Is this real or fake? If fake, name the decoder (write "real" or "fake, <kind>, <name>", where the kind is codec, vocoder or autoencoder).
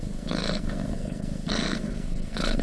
fake, codec, SNAC